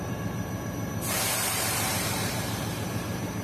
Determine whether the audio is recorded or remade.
remade